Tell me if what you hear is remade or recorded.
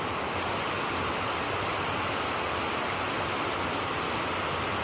recorded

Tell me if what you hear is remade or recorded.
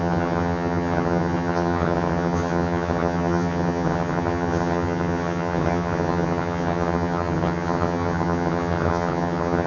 remade